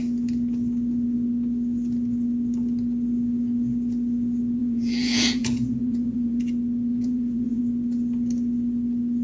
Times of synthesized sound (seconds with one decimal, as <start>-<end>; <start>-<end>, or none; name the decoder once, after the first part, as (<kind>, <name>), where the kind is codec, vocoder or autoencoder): 4.6-6.4 (vocoder, Vocos); 6.9-7.6